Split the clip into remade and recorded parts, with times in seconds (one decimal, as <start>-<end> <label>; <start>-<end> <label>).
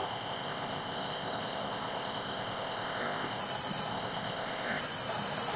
0.0-3.4 remade; 3.4-3.9 recorded; 3.9-4.8 remade; 4.8-5.6 recorded